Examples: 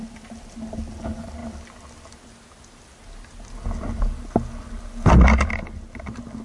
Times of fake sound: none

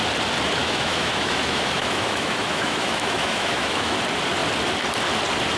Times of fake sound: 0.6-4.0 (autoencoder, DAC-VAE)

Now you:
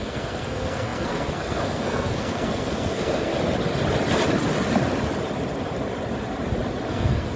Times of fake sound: 0.0-3.3 (codec, SNAC); 6.9-7.4

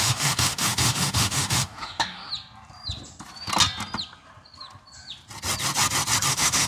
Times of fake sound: 0.0-2.3 (autoencoder, DAC-VAE); 6.3-6.7

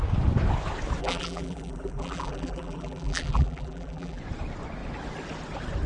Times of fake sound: 1.0-4.2 (vocoder, BigVGAN v2)

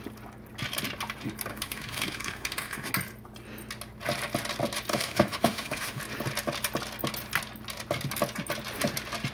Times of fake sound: 1.5-2.9 (autoencoder, DAC-VAE); 4.9-6.0

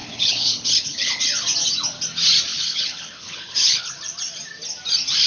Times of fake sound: 0.0-1.2 (codec, HILCodec); 2.5-3.9